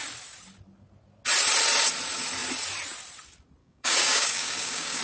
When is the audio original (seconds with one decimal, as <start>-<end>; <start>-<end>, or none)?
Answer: 0.0-3.6